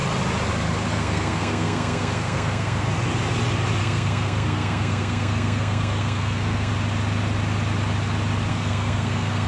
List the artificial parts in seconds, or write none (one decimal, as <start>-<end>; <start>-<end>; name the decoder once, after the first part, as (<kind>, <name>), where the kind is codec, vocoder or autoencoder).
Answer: 0.9-2.9 (codec, SNAC); 3.8-6.7; 8.5-9.5